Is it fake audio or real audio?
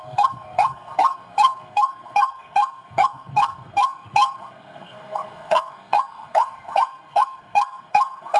fake